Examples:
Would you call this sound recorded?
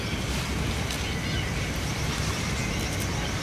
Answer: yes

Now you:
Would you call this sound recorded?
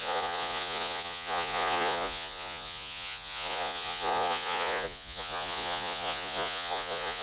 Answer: no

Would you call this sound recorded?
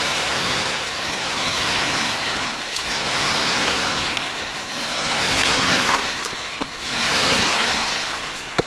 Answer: no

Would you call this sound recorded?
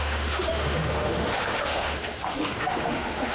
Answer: no